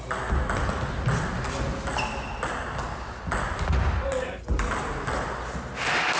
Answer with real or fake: real